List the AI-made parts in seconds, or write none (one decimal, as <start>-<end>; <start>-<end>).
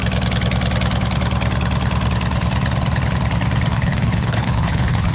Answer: 3.7-5.1